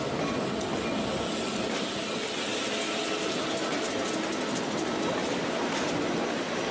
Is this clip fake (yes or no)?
no